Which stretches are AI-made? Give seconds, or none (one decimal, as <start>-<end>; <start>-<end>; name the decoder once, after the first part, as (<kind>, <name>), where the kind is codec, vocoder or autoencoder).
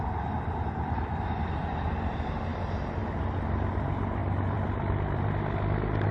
4.2-5.3 (vocoder, BigVGAN v2)